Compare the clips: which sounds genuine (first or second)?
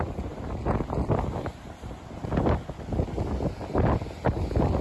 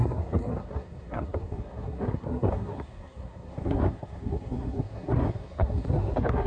first